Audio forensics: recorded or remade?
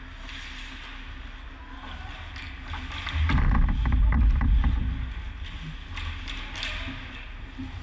recorded